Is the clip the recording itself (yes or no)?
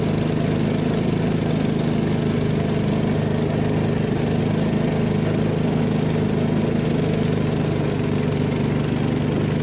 yes